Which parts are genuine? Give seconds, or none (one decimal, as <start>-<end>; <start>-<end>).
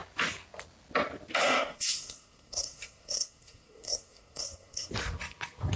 0.0-1.4; 4.9-5.8